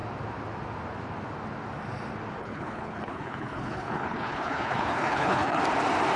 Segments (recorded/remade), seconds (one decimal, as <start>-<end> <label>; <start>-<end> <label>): 0.0-2.4 recorded; 2.4-5.6 remade; 5.6-6.2 recorded